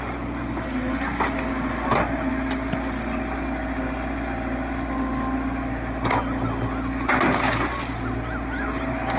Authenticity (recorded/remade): recorded